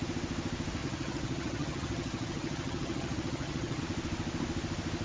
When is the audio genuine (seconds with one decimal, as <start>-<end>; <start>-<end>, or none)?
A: 0.0-0.8; 3.8-5.0